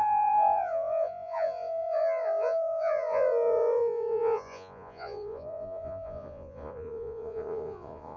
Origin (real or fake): fake